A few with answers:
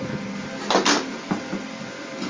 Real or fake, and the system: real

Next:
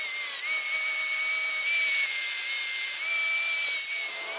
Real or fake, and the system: real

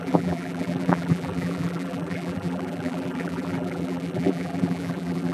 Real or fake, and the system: fake, vocoder, BigVGAN v2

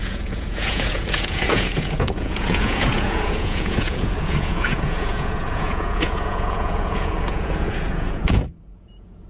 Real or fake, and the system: fake, vocoder, Vocos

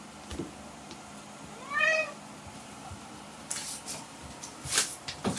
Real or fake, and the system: fake, vocoder, BigVGAN v2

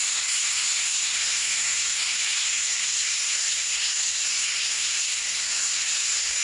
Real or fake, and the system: fake, codec, SNAC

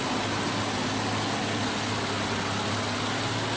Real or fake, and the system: real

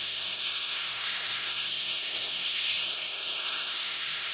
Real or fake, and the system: fake, codec, SNAC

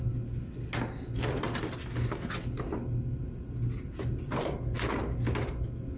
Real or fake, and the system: real